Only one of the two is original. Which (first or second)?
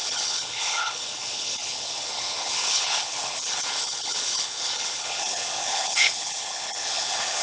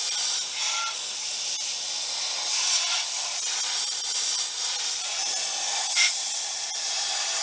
second